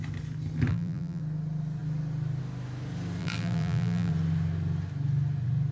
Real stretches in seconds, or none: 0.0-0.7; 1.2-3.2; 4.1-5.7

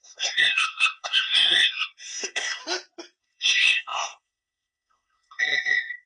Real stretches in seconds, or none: 2.6-3.2

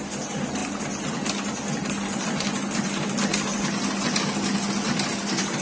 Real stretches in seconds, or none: 0.0-5.6